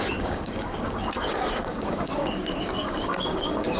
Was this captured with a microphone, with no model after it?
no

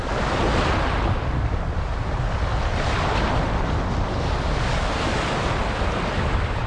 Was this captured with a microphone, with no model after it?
yes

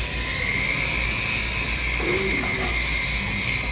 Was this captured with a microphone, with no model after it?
yes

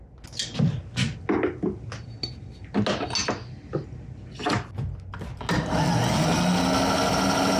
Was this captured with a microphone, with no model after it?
yes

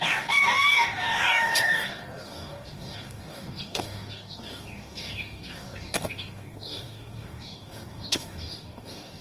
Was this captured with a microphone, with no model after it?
no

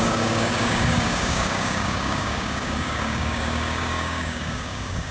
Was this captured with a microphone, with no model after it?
no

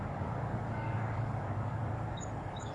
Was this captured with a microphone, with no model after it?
no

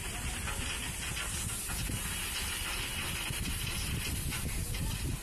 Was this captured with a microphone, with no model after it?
yes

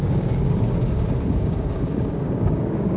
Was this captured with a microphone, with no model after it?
no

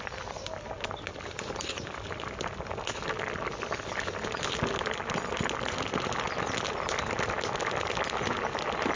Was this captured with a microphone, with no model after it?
yes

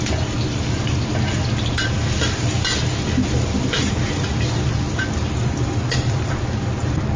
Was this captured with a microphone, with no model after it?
yes